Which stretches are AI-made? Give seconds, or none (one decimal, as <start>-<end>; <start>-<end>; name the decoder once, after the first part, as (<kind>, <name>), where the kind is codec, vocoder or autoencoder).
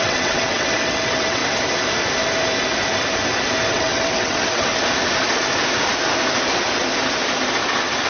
0.0-1.4 (vocoder, WaveNeXt); 3.7-4.7